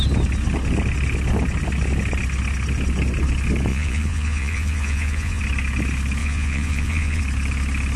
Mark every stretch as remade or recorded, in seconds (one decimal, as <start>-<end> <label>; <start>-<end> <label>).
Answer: 0.0-3.7 recorded; 3.7-5.4 remade; 5.4-6.2 recorded; 6.2-7.2 remade; 7.2-8.0 recorded